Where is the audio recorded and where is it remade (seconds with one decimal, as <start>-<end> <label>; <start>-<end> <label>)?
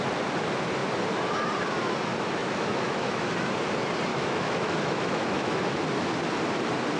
0.0-2.4 recorded; 2.4-3.3 remade; 3.3-4.1 recorded; 4.1-5.8 remade; 5.8-7.0 recorded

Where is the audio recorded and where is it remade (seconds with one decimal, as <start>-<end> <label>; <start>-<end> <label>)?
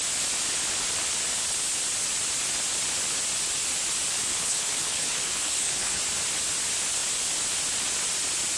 0.0-4.3 recorded; 4.3-6.0 remade; 6.0-8.6 recorded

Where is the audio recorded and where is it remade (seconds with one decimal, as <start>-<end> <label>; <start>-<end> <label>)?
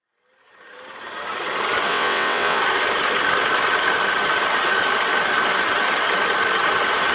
0.0-1.9 recorded; 1.9-2.6 remade; 2.6-7.1 recorded